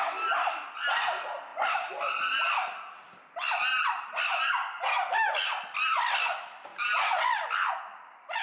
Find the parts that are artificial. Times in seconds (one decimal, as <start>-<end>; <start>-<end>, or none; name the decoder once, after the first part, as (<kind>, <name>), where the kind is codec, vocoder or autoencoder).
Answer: none